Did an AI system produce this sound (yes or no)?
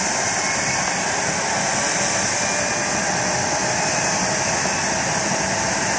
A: no